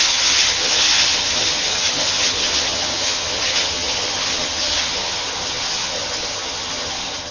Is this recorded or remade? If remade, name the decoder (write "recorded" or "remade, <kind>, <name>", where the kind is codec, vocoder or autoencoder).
remade, vocoder, HiFi-GAN